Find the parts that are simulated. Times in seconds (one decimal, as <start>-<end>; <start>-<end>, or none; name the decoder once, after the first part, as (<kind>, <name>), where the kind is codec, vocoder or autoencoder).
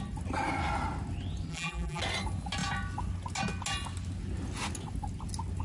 1.5-2.0 (vocoder, BigVGAN v2)